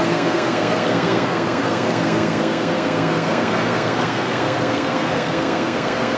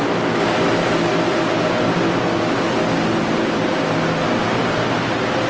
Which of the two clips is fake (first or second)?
first